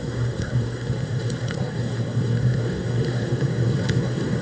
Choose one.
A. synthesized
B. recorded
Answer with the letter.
A